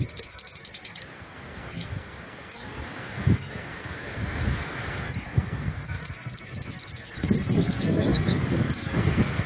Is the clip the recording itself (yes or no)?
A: no